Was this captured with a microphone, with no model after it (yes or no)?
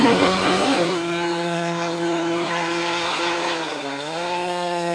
no